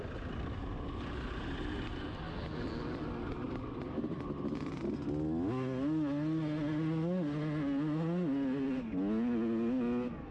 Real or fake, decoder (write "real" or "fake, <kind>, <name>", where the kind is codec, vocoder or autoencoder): real